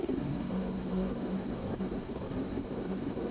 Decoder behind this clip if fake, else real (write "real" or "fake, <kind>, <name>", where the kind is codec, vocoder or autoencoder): fake, codec, SNAC